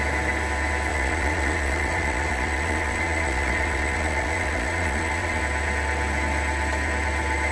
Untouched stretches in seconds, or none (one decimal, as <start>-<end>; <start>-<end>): 0.0-0.9; 5.4-7.5